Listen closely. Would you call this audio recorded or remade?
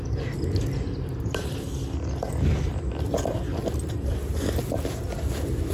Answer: recorded